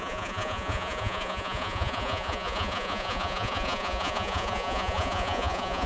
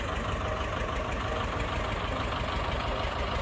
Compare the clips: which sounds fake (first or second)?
first